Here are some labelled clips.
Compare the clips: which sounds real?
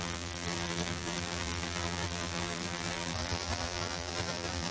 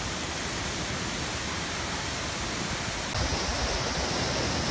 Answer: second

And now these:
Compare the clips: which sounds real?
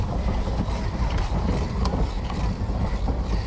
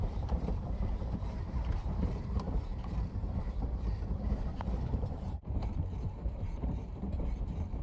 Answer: first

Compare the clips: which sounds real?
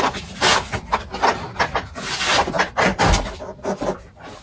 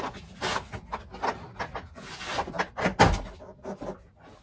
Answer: second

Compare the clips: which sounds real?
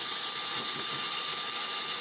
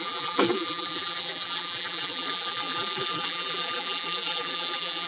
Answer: first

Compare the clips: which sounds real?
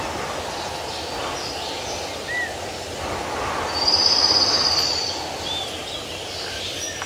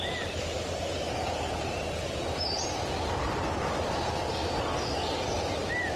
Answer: first